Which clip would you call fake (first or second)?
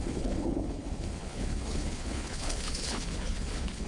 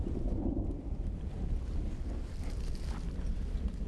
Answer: first